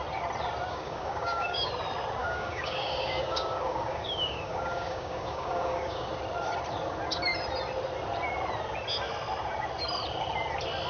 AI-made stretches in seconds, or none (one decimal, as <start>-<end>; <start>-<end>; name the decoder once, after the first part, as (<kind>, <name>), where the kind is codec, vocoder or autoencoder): 0.7-1.7 (codec, DAC); 2.2-6.1